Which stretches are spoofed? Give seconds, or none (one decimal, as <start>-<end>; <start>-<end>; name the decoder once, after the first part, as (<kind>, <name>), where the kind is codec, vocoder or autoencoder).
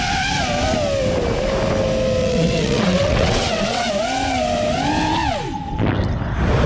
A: 2.2-3.9 (vocoder, WaveNeXt)